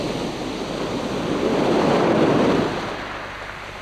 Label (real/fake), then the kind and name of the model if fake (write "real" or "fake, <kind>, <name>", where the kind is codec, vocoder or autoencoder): real